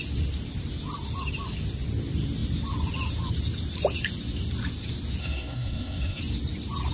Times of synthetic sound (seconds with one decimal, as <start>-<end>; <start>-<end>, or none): 5.2-6.2